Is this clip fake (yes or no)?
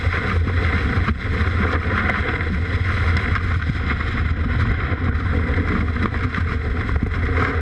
no